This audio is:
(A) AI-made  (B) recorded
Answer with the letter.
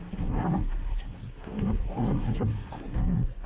A